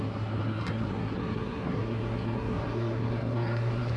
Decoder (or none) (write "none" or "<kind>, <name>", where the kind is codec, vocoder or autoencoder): codec, SNAC